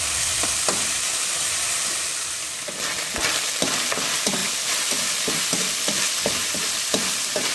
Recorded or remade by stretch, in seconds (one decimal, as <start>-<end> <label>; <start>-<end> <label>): 0.0-7.5 remade